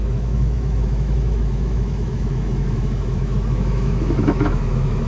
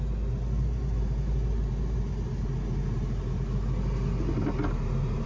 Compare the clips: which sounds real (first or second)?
second